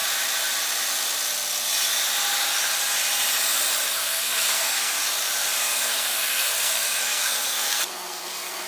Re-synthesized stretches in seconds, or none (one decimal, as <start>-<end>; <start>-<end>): 3.9-5.0; 5.6-8.7